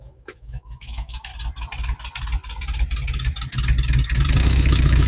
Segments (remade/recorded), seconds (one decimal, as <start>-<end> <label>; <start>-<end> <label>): 0.0-1.3 remade; 1.3-4.4 recorded; 4.4-5.1 remade